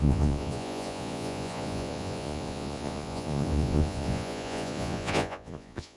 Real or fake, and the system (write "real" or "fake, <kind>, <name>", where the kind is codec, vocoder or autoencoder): fake, vocoder, Vocos